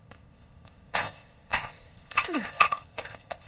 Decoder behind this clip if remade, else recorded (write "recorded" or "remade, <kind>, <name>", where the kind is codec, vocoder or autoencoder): remade, codec, ZipCodec